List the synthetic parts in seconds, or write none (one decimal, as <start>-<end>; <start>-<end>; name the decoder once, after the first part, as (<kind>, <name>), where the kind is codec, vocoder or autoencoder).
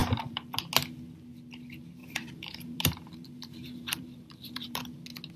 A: 0.0-0.6 (vocoder, BigVGAN v2); 2.0-4.8